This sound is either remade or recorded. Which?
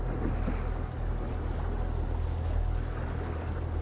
recorded